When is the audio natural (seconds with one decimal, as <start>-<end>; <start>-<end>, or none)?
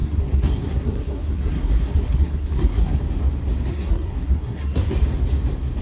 3.0-3.7; 4.9-5.8